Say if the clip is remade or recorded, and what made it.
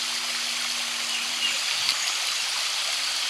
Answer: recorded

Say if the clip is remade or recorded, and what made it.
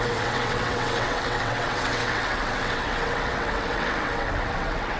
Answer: remade, vocoder, WaveNeXt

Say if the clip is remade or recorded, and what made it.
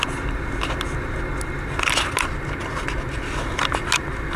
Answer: recorded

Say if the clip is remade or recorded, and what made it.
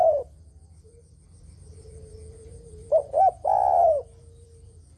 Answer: remade, vocoder, BigVGAN v2